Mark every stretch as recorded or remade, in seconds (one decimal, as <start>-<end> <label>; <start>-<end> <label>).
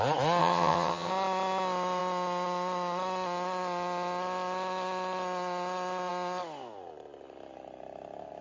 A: 0.0-0.4 recorded; 0.4-1.1 remade; 1.1-8.4 recorded